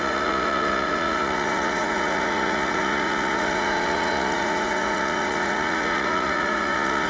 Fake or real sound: fake